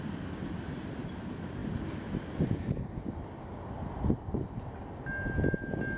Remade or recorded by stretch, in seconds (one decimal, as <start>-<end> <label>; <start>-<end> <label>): 0.0-6.0 recorded